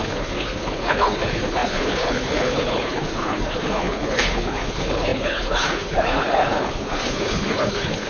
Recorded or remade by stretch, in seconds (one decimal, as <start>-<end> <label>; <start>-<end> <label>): 0.0-8.1 remade